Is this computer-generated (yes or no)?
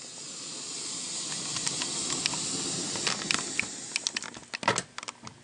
no